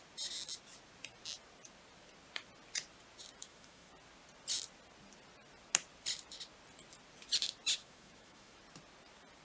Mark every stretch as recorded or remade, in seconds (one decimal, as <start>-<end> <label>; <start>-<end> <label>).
0.0-3.4 recorded; 3.4-3.9 remade; 3.9-7.8 recorded; 7.8-8.6 remade; 8.6-9.4 recorded